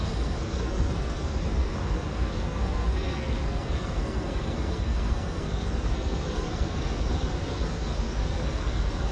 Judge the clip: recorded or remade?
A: remade